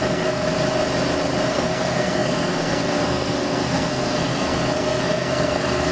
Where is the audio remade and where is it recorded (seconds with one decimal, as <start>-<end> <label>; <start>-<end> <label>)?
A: 0.0-0.5 remade; 0.5-1.5 recorded; 1.5-5.9 remade